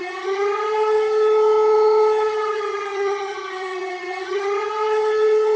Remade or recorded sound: remade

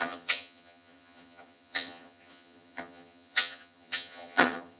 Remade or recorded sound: remade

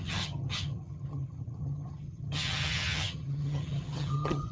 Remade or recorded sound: remade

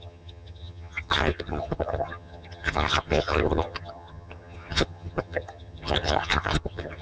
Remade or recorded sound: remade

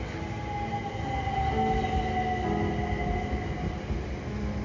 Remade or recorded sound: recorded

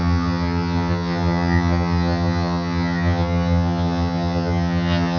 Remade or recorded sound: remade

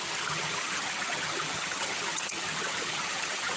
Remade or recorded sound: remade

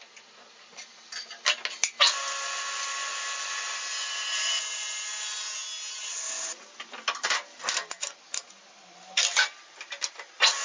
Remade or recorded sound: recorded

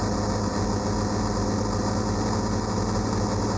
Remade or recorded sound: recorded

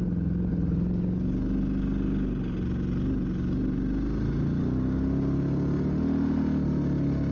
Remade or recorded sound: recorded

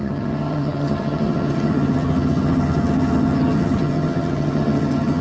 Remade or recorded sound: remade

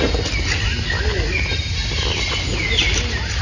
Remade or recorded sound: recorded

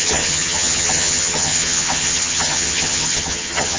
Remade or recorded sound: remade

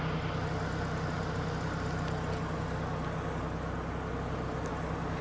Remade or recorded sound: recorded